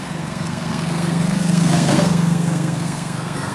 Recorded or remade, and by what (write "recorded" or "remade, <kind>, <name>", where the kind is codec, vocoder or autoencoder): remade, codec, SNAC